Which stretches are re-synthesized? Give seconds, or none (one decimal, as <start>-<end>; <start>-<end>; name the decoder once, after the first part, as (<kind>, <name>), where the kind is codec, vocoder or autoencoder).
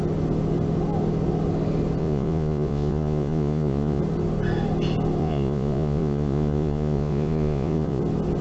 2.0-4.0 (vocoder, Vocos); 5.2-8.0